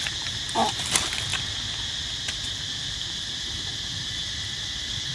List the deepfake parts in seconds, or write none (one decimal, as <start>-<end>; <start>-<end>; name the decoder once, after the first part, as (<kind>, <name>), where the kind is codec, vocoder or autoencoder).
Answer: none